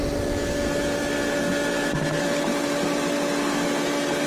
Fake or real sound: real